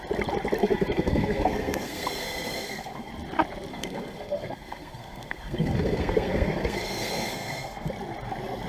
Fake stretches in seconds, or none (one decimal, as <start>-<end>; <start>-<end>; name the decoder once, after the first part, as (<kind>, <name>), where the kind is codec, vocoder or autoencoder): 0.6-3.1 (codec, SNAC); 3.7-7.9

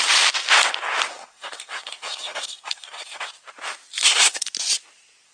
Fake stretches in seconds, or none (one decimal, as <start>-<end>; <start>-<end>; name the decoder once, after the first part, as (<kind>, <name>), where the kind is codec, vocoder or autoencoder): 1.1-3.2 (codec, SNAC); 4.0-4.5